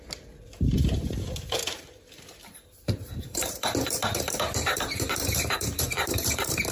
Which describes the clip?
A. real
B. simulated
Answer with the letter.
B